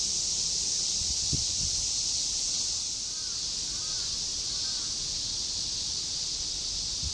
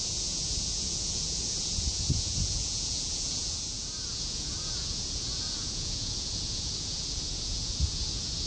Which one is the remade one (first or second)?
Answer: second